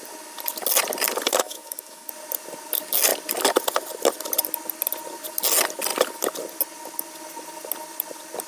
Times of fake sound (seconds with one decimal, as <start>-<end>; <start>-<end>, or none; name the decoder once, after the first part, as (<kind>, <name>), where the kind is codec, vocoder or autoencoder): 1.4-2.1 (autoencoder, DAC-VAE)